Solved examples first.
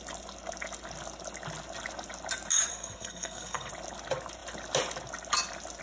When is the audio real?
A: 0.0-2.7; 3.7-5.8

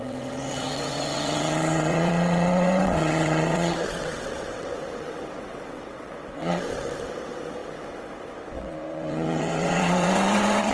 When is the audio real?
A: none

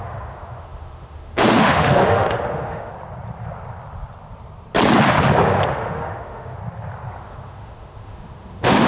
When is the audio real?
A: 2.9-5.7; 6.6-7.1

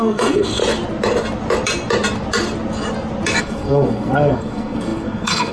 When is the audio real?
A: 0.6-3.4

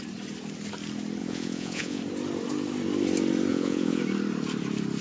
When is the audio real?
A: 0.0-1.2; 2.0-3.5; 4.0-5.0

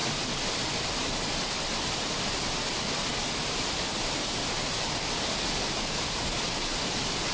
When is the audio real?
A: 0.0-7.3